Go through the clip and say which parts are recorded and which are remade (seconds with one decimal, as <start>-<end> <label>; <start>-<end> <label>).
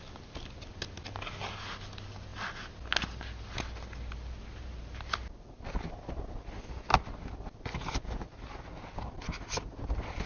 0.0-10.3 recorded